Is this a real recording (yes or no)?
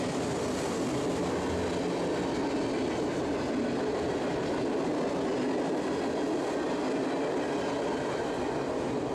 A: yes